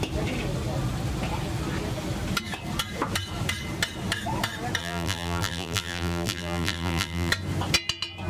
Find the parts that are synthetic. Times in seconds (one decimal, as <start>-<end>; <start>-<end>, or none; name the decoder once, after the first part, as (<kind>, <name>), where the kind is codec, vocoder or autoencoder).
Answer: 4.8-7.3 (vocoder, BigVGAN v2)